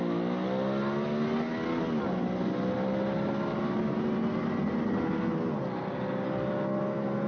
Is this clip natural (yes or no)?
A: yes